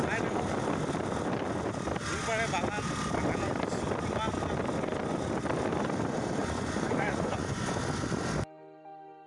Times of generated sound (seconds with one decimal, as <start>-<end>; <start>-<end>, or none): 6.4-7.8